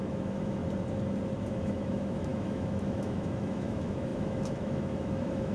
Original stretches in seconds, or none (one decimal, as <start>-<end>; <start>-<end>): 0.6-1.5